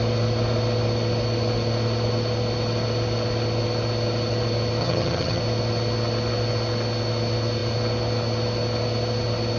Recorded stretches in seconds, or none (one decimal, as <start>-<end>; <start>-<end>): 0.0-4.8; 5.4-9.6